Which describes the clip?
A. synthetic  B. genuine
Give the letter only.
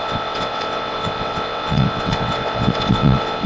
A